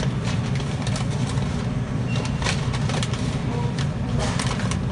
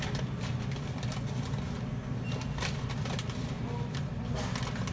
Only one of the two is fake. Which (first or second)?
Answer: first